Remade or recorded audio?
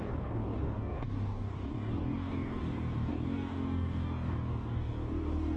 remade